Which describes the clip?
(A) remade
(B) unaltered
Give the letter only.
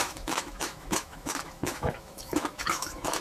A